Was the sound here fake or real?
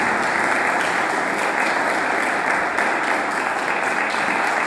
real